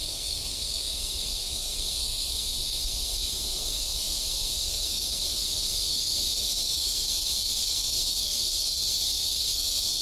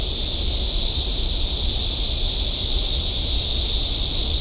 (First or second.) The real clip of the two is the second